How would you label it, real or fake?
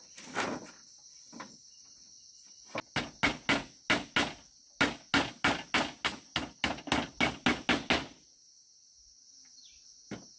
real